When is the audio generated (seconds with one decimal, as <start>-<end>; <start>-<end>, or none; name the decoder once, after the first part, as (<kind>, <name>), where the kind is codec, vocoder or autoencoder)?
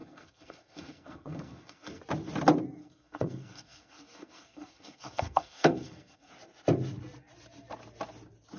0.0-2.0 (codec, SNAC); 2.8-6.3